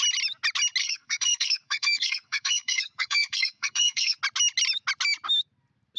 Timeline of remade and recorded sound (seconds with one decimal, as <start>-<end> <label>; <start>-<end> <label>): 0.0-0.8 recorded; 0.8-4.2 remade; 4.2-6.0 recorded